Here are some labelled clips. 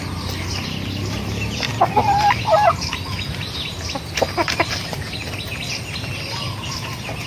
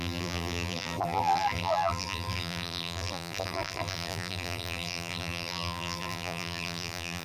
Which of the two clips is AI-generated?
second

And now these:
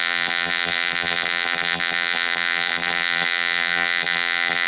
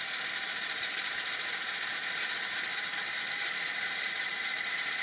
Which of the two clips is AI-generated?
first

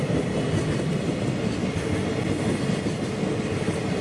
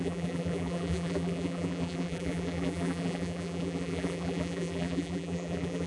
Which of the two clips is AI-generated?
second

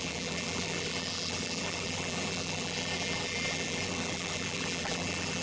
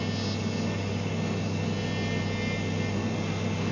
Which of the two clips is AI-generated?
first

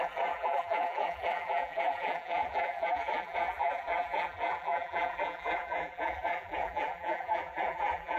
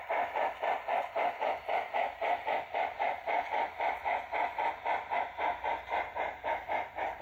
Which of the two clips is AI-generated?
first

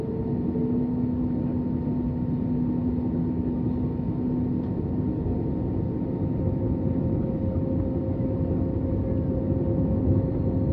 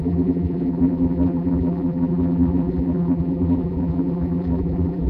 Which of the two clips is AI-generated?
second